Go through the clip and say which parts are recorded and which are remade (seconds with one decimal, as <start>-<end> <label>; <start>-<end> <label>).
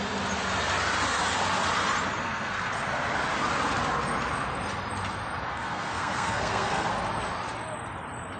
0.0-2.2 recorded; 2.2-2.7 remade; 2.7-5.5 recorded; 5.5-6.9 remade; 6.9-8.4 recorded